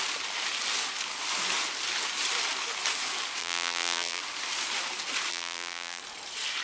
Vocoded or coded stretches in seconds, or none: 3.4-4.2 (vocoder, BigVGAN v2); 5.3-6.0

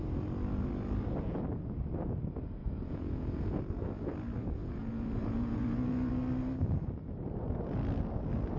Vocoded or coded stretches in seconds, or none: 2.6-3.6 (vocoder, Vocos); 4.6-6.1

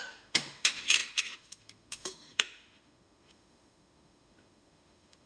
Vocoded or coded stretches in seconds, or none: 0.0-5.3 (autoencoder, DAC-VAE)

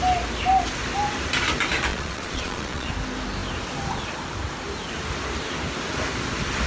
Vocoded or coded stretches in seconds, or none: 1.9-2.9 (vocoder, Vocos)

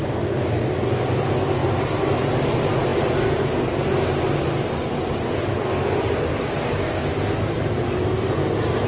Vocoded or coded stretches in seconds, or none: none

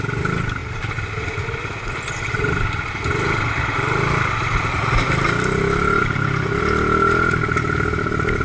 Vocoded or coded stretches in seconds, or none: none